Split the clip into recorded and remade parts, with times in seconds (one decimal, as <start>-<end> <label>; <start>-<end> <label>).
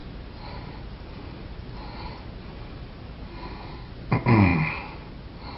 0.0-3.3 recorded; 3.3-3.9 remade; 3.9-5.6 recorded